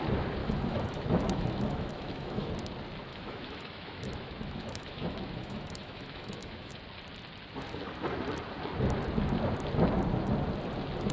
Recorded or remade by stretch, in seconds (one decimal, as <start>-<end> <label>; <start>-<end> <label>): 0.0-0.4 recorded; 0.4-2.5 remade; 2.5-3.1 recorded; 3.1-6.8 remade; 6.8-11.1 recorded